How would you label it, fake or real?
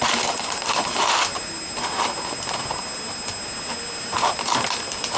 real